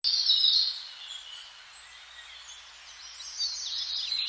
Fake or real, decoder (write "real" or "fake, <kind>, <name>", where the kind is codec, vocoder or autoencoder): real